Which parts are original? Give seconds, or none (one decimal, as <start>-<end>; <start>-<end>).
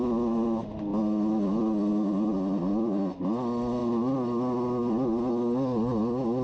0.0-6.4